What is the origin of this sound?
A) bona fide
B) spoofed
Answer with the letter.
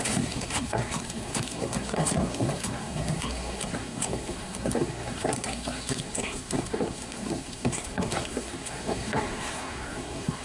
B